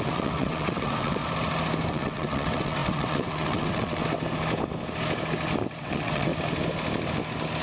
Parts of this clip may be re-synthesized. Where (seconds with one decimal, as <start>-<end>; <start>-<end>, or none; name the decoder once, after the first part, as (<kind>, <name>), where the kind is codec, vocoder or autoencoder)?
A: 0.0-1.2 (vocoder, WaveNeXt); 1.9-4.0; 5.8-6.3